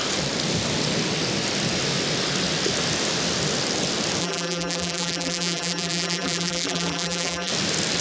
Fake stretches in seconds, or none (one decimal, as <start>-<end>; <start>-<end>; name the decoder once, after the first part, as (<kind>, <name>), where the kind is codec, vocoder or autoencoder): 4.2-7.5 (vocoder, BigVGAN v2)